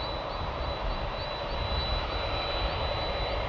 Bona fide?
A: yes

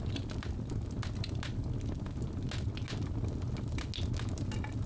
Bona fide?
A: yes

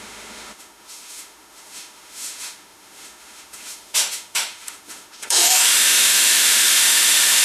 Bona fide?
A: no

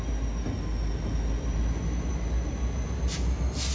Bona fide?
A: yes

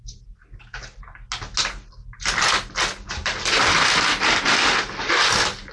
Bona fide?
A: yes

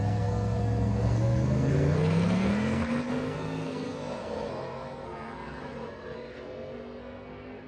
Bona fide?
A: no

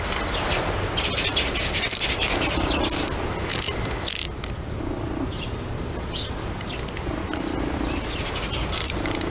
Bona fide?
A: yes